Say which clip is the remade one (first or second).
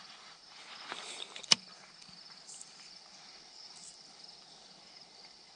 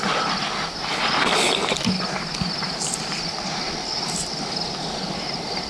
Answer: first